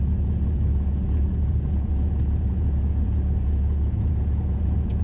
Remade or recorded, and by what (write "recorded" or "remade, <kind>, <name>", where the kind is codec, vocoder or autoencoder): remade, vocoder, Vocos